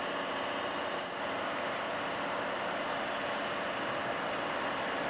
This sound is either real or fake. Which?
real